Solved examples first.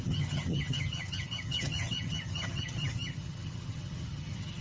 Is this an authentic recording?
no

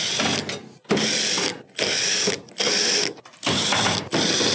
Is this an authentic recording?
yes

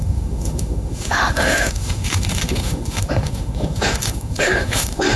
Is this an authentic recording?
no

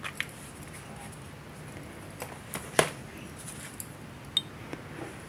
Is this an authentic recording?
yes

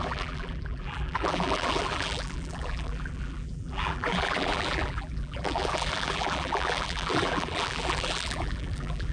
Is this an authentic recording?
no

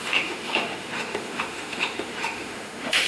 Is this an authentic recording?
no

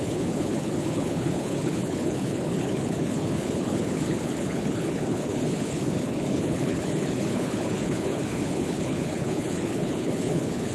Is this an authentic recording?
no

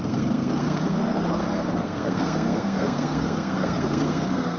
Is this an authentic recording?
no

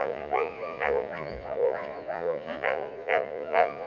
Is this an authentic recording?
no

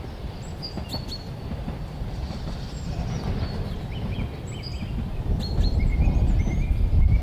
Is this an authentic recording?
no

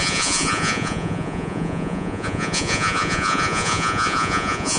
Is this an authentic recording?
no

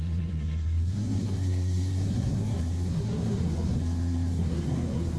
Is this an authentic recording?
no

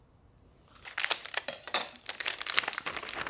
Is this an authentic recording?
yes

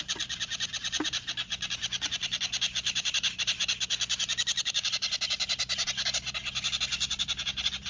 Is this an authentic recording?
yes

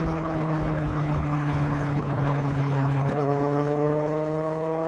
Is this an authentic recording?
no